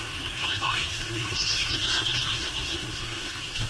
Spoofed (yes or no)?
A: yes